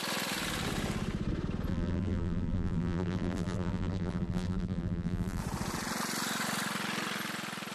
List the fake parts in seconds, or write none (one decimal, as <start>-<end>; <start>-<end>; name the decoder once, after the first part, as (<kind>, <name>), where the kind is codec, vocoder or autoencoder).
1.7-5.4 (vocoder, BigVGAN v2)